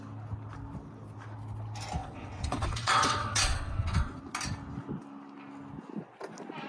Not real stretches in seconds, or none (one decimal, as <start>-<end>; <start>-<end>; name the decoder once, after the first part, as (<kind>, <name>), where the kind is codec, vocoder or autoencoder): 2.0-4.2 (vocoder, WaveNeXt)